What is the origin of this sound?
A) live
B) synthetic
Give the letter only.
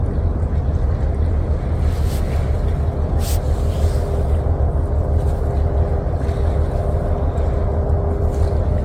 A